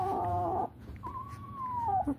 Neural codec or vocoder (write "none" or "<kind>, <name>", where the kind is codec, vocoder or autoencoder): vocoder, Vocos